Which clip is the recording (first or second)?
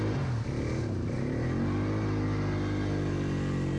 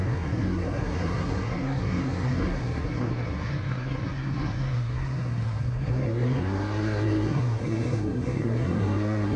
first